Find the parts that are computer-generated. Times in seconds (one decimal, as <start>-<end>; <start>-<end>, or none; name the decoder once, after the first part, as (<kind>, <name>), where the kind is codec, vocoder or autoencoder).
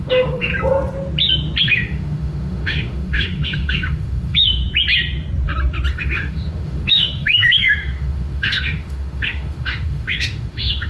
0.0-0.5 (autoencoder, DAC-VAE); 1.6-4.6; 5.9-10.9